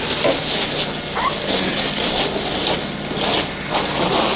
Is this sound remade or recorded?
recorded